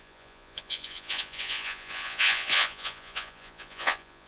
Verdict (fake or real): fake